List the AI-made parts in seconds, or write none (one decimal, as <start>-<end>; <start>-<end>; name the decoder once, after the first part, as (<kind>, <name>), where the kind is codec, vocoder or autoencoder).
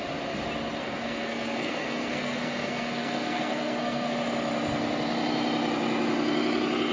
0.8-4.1 (codec, SNAC)